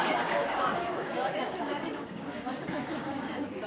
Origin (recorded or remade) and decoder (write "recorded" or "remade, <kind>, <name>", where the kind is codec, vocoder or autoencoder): remade, codec, DAC